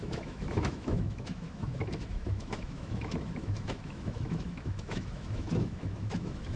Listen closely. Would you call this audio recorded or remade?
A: remade